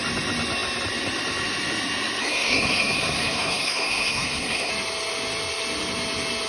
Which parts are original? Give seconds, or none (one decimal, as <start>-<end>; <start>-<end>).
0.0-2.2; 4.7-6.5